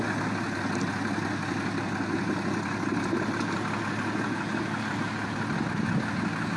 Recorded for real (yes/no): yes